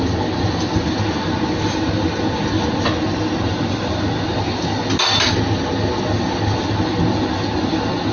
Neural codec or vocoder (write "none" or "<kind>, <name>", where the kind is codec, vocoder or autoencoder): none